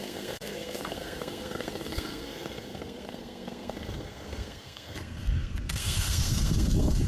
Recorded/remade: remade